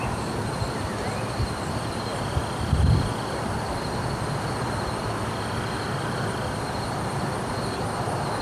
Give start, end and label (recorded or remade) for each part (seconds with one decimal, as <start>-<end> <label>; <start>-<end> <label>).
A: 0.0-8.4 recorded